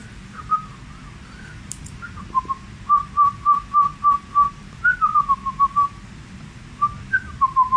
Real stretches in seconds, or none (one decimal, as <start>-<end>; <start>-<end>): 0.0-7.8